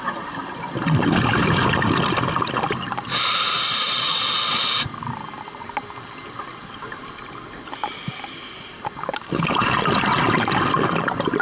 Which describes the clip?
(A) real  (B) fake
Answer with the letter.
A